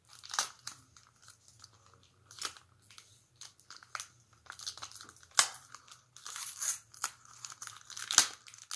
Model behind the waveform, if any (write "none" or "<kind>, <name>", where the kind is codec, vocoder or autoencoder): none